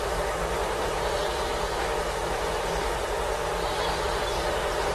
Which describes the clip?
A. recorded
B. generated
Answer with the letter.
B